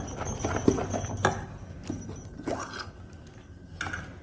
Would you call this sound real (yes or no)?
yes